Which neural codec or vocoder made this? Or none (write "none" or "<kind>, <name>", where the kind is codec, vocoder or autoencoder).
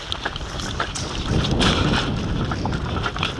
none